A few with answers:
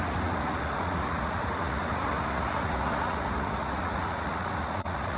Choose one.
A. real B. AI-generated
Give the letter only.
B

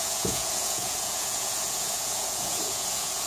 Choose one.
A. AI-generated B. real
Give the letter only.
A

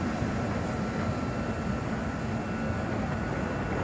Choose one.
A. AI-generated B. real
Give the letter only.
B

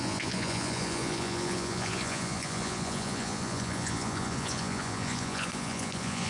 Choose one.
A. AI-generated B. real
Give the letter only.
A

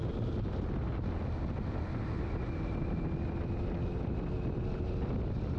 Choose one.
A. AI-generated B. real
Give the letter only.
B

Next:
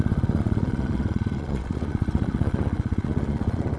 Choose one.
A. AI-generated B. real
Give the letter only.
A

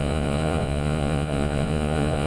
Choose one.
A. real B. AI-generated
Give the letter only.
B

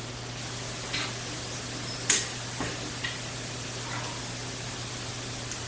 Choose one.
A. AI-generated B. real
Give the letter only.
B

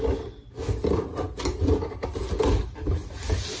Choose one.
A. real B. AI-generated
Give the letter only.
A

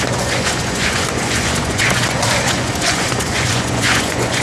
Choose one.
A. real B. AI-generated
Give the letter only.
B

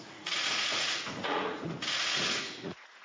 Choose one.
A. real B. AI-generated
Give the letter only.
B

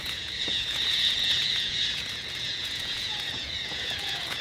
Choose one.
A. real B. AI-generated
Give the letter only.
B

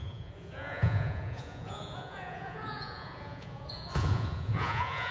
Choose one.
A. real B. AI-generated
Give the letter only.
B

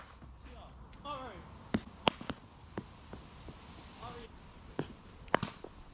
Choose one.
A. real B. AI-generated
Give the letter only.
A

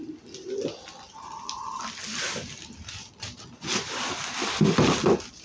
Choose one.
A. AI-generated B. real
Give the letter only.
B